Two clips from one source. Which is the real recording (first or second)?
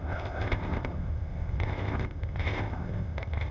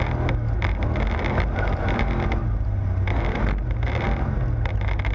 second